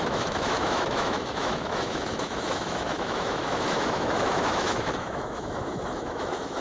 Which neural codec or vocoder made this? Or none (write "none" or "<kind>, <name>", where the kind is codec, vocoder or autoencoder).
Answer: autoencoder, DAC-VAE